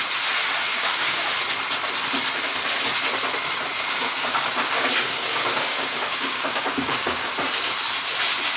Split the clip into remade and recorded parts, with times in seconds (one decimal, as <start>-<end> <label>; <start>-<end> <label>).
0.0-0.7 recorded; 0.7-1.3 remade; 1.3-3.7 recorded; 3.7-7.3 remade; 7.3-8.6 recorded